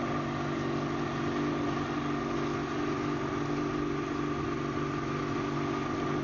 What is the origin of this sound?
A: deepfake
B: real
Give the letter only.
B